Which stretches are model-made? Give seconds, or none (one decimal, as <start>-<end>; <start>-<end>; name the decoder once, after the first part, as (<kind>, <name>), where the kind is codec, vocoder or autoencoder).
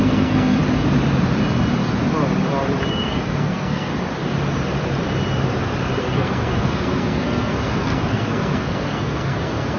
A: 0.0-0.6 (codec, SNAC); 2.9-3.9; 6.0-9.8